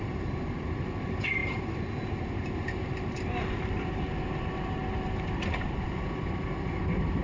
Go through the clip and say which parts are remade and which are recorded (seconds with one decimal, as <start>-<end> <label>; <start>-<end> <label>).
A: 0.0-7.2 recorded